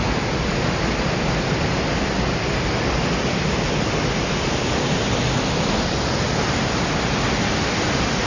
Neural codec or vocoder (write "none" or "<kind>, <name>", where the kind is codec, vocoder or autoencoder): none